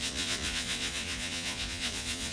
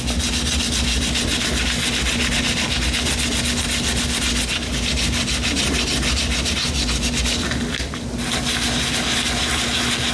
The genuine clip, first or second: second